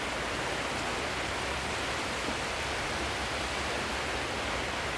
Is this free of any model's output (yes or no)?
yes